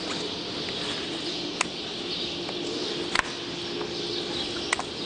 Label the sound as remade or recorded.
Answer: recorded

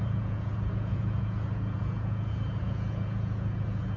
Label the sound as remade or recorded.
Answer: remade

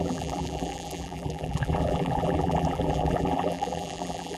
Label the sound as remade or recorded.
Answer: remade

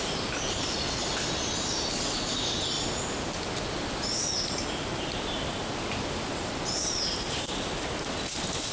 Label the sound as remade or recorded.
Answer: recorded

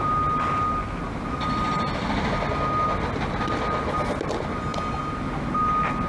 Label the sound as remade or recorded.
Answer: recorded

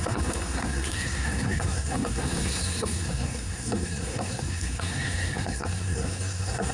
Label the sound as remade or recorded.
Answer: remade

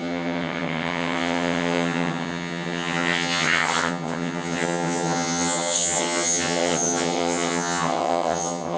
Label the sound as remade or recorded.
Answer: remade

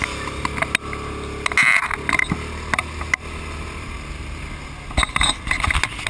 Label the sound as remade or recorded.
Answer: recorded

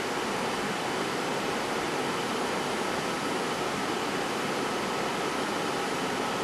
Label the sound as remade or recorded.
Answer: recorded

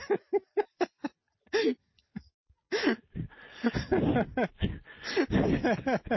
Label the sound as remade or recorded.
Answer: recorded